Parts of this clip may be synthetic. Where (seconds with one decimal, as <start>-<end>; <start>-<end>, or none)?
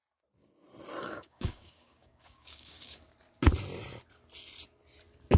1.0-3.0